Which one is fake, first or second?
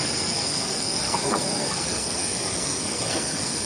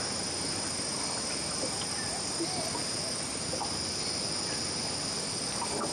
first